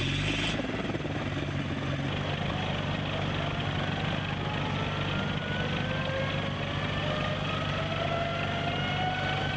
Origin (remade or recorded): recorded